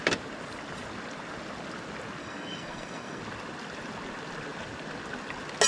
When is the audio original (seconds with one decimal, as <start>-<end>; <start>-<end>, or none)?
0.0-2.2; 3.2-5.7